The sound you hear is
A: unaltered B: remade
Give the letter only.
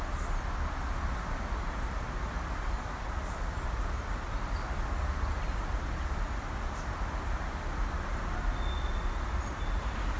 A